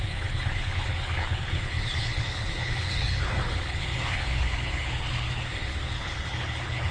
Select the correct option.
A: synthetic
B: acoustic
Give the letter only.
A